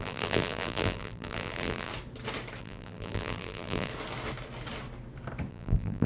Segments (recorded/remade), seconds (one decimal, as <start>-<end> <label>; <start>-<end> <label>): 0.0-1.9 remade; 1.9-2.6 recorded; 2.6-3.9 remade; 3.9-5.5 recorded; 5.5-6.1 remade